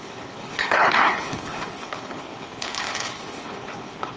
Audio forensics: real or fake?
fake